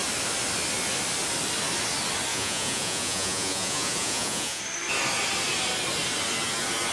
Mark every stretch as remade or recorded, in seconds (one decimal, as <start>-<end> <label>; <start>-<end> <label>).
0.0-2.3 recorded; 2.3-4.6 remade; 4.6-6.9 recorded

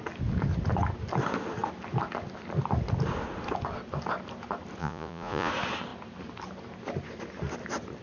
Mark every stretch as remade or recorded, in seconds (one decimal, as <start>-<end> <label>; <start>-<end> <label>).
0.0-4.8 recorded; 4.8-5.5 remade; 5.5-8.0 recorded

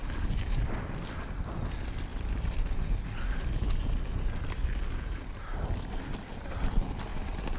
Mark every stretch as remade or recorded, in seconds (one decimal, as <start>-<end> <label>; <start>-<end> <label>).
0.0-7.6 recorded